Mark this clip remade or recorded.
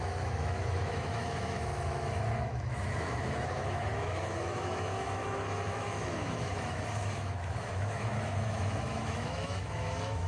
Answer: remade